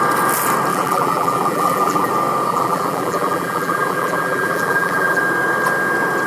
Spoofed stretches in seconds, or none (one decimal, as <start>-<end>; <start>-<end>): 0.7-2.1; 2.5-5.2